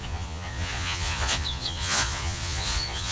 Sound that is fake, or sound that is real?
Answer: fake